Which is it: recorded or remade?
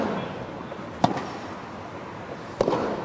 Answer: recorded